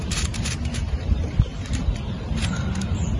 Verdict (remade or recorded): remade